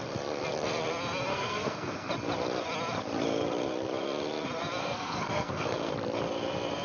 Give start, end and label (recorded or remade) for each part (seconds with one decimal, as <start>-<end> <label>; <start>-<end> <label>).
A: 0.0-1.3 recorded; 1.3-2.1 remade; 2.1-4.8 recorded; 4.8-5.9 remade; 5.9-6.8 recorded